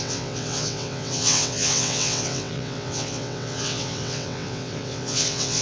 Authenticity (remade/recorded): remade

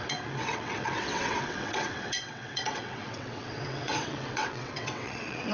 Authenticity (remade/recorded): remade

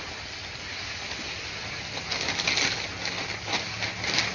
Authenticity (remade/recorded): recorded